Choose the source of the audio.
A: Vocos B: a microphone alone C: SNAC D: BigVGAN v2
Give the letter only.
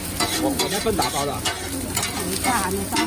D